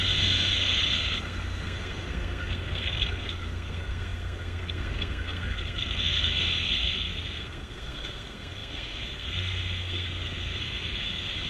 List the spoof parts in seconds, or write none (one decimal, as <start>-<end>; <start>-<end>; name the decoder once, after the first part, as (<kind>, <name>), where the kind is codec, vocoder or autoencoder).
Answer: 0.0-11.5 (codec, SNAC)